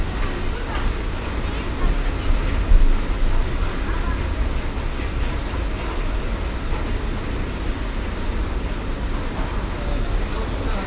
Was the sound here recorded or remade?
recorded